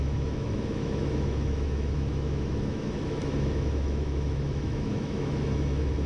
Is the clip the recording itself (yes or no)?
no